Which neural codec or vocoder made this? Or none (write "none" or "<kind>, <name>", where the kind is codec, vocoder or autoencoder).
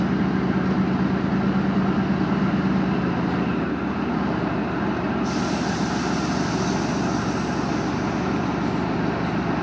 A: none